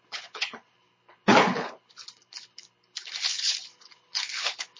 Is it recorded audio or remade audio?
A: remade